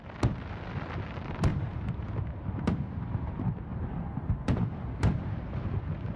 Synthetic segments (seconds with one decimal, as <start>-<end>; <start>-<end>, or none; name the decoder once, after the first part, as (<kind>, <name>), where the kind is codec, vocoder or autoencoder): 1.5-2.8 (vocoder, BigVGAN v2); 3.7-5.2